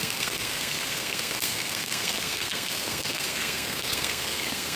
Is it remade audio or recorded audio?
remade